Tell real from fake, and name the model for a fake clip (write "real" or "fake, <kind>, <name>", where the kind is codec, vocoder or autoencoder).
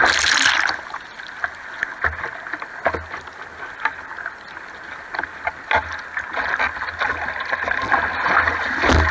real